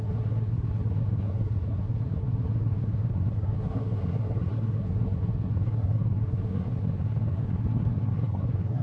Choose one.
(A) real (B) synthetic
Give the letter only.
B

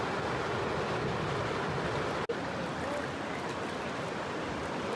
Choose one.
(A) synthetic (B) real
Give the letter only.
B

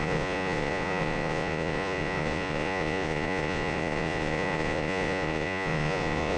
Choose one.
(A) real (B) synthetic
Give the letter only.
B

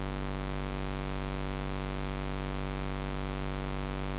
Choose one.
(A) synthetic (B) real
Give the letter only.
B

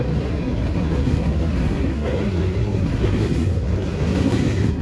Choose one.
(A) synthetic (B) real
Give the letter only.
A